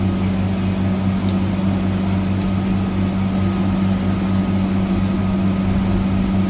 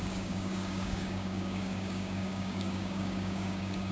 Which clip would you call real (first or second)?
first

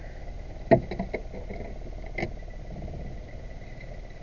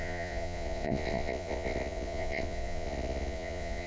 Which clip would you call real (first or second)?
first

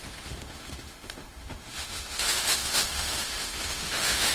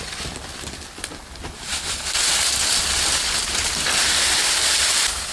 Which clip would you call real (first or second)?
second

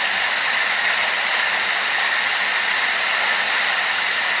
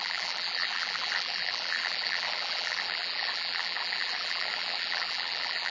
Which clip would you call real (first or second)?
first